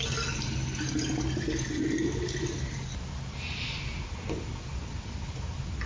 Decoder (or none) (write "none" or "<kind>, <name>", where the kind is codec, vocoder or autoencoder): none